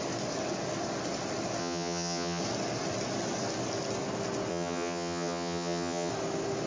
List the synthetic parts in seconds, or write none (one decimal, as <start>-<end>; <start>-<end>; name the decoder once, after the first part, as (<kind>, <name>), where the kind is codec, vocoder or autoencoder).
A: 1.6-2.4 (vocoder, HiFi-GAN); 4.5-6.1